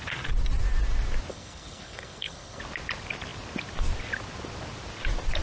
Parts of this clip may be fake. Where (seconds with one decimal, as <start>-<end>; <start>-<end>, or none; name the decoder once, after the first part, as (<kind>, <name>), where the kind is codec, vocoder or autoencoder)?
1.3-2.6 (codec, SNAC)